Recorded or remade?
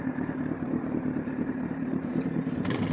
remade